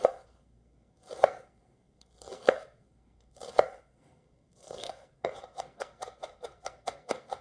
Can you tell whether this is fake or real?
fake